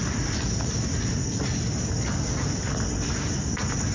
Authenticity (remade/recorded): recorded